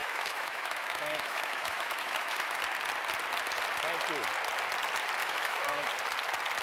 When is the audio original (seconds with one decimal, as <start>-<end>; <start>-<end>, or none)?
2.6-5.2; 5.9-6.6